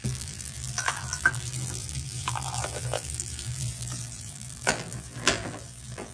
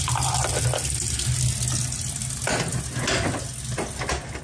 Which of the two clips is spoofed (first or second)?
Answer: first